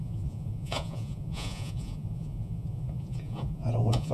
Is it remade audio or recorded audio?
remade